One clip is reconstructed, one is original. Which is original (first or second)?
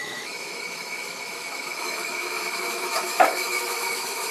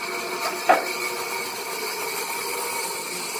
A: second